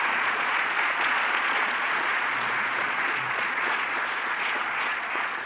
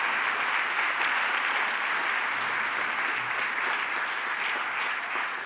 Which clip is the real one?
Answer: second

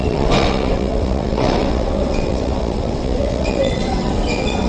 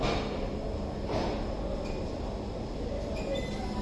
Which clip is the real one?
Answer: second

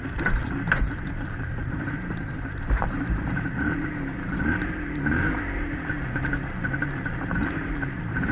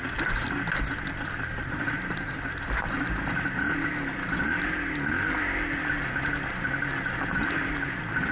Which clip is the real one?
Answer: second